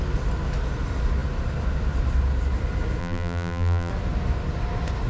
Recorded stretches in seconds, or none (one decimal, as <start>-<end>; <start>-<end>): 0.0-3.0; 3.9-5.1